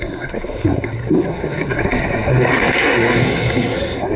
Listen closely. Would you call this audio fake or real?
fake